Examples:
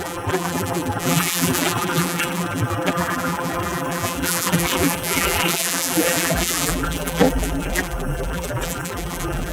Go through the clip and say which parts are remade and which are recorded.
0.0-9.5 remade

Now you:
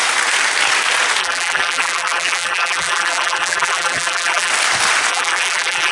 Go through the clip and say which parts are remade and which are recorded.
0.0-1.2 recorded; 1.2-4.5 remade; 4.5-5.1 recorded; 5.1-5.9 remade

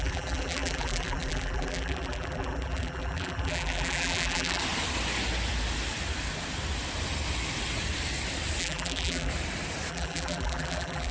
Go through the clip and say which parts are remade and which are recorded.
0.0-4.6 remade; 4.6-8.6 recorded; 8.6-9.3 remade; 9.3-9.9 recorded; 9.9-11.1 remade